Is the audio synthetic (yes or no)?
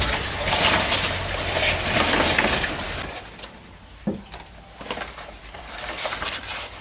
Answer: no